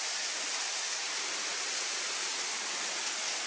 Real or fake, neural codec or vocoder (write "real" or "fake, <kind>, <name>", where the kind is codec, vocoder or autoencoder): real